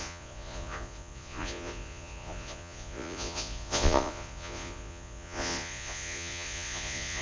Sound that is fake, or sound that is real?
fake